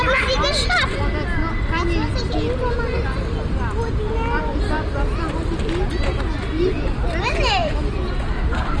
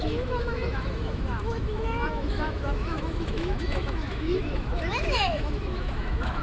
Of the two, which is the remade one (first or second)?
second